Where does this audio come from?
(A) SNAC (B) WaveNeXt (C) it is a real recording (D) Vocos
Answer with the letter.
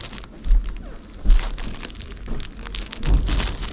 C